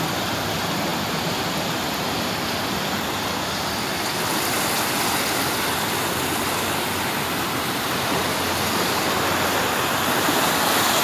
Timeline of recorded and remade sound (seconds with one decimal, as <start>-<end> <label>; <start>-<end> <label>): 0.0-11.0 recorded